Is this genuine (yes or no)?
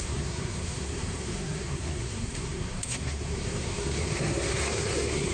no